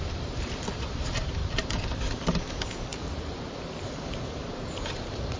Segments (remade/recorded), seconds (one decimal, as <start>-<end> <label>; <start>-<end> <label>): 0.0-1.4 remade; 1.4-2.4 recorded; 2.4-5.4 remade